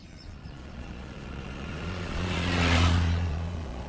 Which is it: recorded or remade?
remade